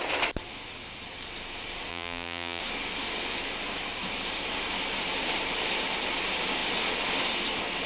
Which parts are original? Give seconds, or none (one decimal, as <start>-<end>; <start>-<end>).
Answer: 0.0-1.9; 2.6-7.9